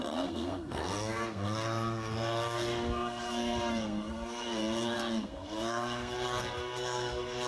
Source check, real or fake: fake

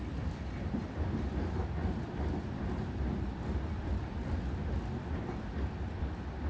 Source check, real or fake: fake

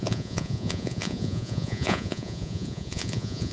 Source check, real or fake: fake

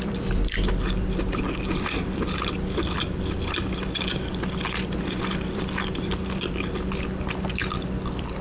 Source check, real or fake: fake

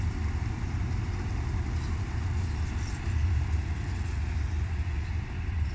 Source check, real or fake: real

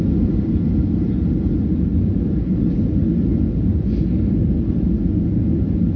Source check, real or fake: real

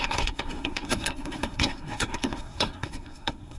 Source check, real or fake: fake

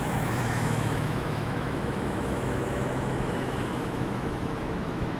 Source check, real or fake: fake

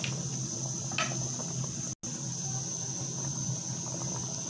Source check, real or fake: real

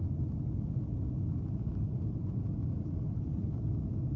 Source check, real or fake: real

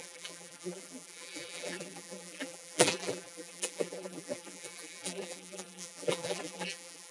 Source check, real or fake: fake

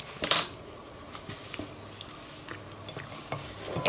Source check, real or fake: real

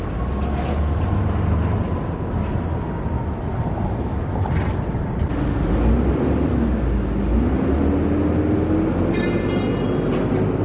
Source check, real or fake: real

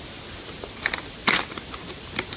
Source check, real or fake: real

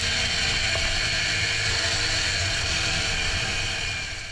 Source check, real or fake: real